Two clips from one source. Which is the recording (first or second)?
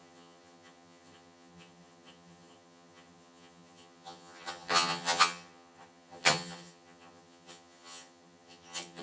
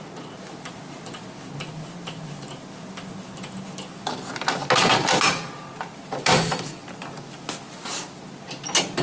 second